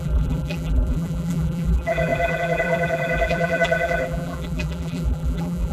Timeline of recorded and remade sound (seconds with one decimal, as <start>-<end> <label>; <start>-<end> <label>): 0.0-5.7 remade

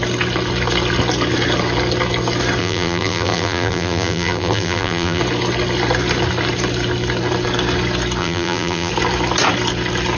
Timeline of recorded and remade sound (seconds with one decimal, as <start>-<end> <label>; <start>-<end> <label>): 0.0-2.6 recorded; 2.6-5.2 remade; 5.2-8.2 recorded; 8.2-8.9 remade; 8.9-10.2 recorded